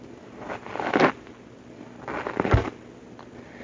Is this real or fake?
real